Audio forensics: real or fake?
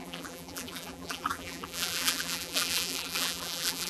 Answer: fake